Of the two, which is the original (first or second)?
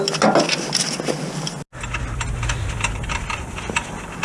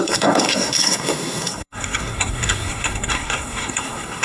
first